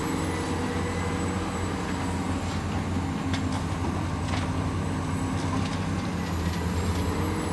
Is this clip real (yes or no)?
yes